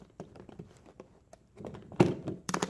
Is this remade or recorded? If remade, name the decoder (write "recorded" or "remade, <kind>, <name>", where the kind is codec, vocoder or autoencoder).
remade, vocoder, BigVGAN v2